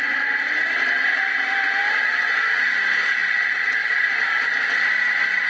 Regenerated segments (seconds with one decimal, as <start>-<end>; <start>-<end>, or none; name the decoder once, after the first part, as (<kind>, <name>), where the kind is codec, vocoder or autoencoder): none